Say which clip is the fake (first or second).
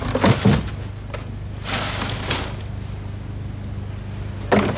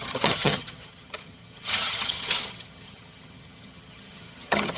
second